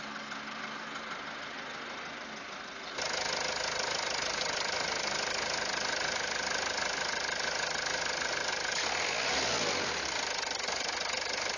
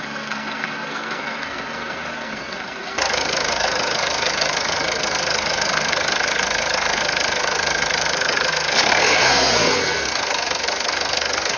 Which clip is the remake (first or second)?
second